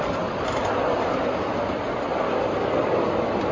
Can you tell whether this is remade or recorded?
recorded